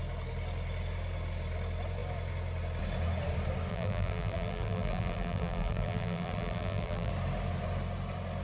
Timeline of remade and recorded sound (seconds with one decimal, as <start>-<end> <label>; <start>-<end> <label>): 0.0-3.7 recorded; 3.7-7.1 remade; 7.1-8.4 recorded